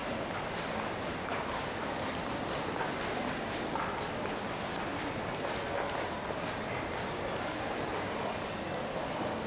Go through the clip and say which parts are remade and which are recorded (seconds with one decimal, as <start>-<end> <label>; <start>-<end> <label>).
0.0-9.5 recorded